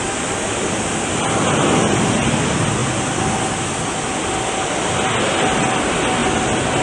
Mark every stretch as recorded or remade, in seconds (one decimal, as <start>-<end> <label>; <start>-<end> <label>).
0.0-6.8 recorded